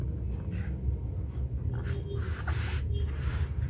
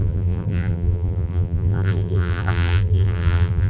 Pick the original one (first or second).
first